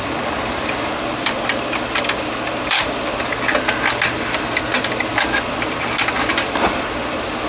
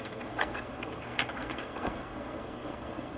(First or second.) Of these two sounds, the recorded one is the first